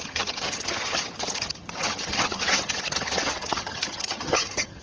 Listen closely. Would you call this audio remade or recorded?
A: remade